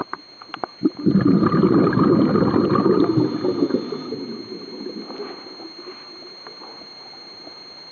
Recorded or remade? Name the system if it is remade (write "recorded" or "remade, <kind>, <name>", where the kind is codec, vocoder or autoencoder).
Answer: recorded